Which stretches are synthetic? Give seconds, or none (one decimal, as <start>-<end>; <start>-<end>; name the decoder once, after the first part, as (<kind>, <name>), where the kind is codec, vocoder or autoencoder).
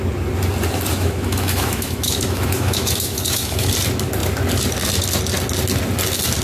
0.9-3.7 (autoencoder, DAC-VAE)